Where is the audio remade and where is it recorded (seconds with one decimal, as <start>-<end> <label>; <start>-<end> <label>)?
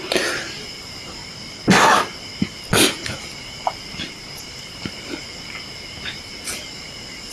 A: 0.0-1.2 remade; 1.2-3.5 recorded; 3.5-7.3 remade